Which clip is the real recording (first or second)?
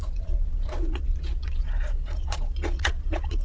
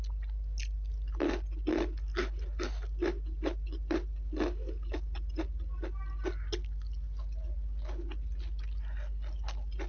second